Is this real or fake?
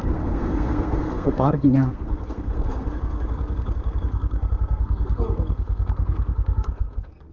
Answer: fake